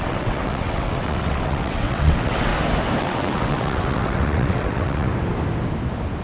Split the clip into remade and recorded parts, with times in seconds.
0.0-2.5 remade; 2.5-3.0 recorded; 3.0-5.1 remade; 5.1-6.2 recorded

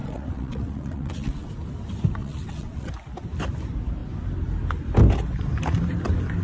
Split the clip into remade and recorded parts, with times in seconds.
0.0-1.5 remade; 1.5-2.2 recorded; 2.2-2.9 remade; 2.9-6.4 recorded

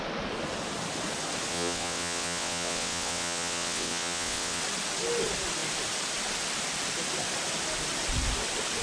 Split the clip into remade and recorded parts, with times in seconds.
0.0-1.5 recorded; 1.5-4.6 remade; 4.6-8.8 recorded

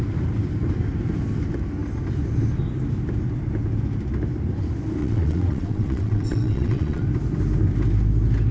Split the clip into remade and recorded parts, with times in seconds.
0.0-5.0 recorded; 5.0-7.0 remade; 7.0-8.5 recorded